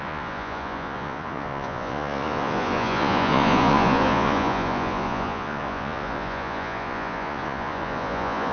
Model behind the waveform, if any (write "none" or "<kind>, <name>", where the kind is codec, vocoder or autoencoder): vocoder, Vocos